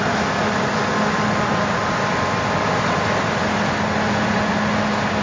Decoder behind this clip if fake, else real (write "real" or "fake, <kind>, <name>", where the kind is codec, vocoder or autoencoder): real